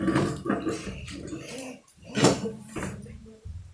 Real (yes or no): no